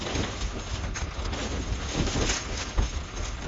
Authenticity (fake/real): real